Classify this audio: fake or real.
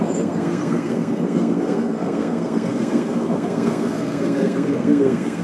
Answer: fake